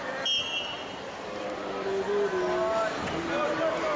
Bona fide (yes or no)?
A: yes